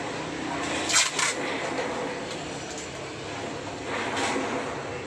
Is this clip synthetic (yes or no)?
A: no